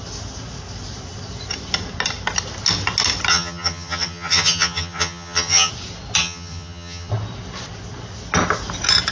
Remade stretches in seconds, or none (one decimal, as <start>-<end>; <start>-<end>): 3.3-5.7; 6.2-7.1